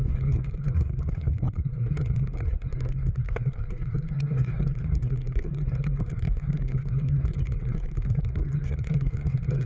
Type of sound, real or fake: fake